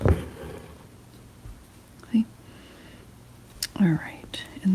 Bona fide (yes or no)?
yes